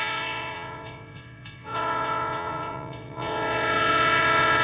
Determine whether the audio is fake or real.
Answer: fake